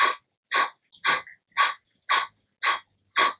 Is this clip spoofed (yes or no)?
no